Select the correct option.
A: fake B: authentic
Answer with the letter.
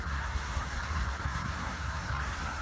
A